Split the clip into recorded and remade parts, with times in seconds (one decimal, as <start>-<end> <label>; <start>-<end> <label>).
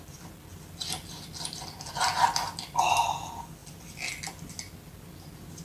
0.0-5.6 recorded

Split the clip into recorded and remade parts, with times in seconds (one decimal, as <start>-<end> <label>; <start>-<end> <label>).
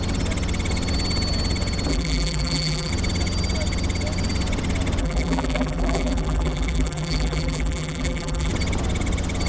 0.0-1.9 recorded; 1.9-2.9 remade; 2.9-5.0 recorded; 5.0-8.5 remade; 8.5-9.5 recorded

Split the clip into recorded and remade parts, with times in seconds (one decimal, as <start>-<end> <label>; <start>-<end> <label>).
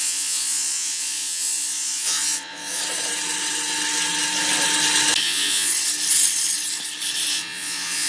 0.0-2.8 remade; 2.8-5.2 recorded; 5.2-5.7 remade; 5.7-7.3 recorded; 7.3-8.1 remade